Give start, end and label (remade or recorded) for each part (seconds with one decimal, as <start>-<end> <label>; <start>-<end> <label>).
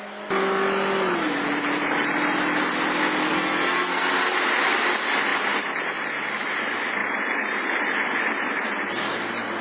0.0-3.3 recorded; 3.3-4.1 remade; 4.1-9.6 recorded